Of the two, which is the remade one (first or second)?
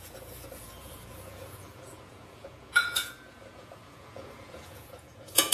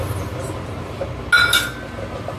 first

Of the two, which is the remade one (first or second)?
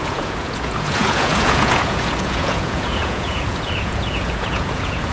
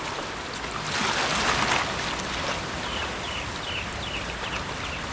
first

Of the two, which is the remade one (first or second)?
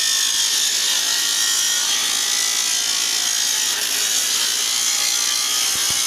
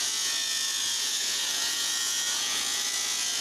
second